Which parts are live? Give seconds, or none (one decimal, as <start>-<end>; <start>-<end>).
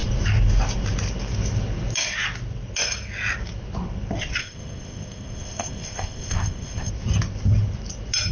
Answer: 0.0-4.4; 6.9-8.3